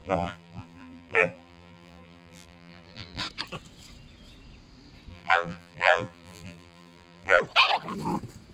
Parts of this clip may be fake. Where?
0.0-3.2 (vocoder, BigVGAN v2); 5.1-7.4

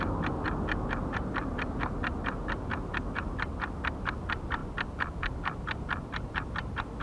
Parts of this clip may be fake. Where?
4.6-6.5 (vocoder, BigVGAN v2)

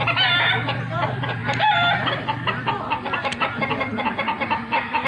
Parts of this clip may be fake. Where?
1.4-2.8 (vocoder, BigVGAN v2)